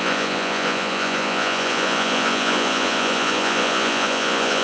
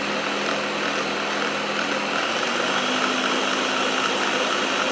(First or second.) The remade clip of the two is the first